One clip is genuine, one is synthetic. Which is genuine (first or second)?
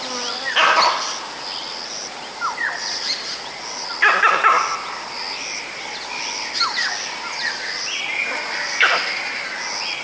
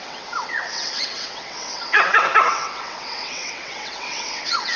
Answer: first